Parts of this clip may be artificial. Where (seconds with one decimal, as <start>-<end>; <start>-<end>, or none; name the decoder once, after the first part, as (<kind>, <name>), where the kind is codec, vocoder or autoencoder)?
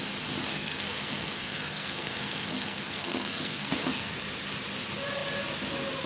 0.5-4.2 (codec, SNAC)